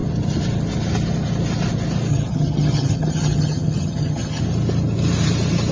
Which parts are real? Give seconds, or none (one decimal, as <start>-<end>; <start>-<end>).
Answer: 0.0-2.1; 4.4-5.7